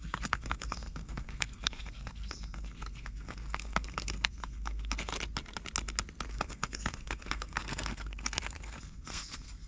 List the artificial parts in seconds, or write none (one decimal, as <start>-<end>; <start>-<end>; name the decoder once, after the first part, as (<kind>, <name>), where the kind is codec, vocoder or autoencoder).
0.0-5.1 (codec, SNAC); 6.3-9.7